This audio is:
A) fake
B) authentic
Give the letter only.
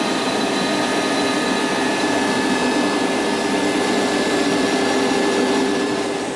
A